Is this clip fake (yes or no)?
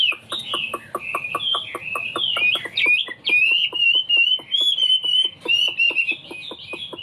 no